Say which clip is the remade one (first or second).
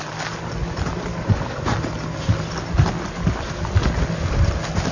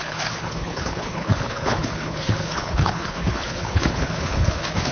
second